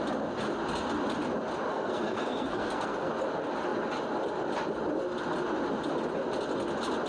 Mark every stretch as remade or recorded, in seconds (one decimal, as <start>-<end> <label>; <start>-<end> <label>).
0.0-1.7 recorded; 1.7-3.1 remade; 3.1-7.1 recorded